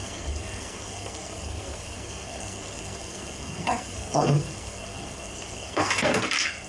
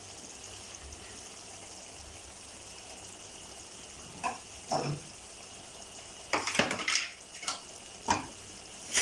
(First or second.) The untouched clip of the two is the second